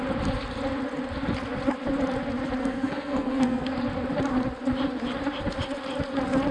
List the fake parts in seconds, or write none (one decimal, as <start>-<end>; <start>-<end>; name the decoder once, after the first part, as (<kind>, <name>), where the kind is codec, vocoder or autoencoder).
2.6-3.7 (codec, SNAC)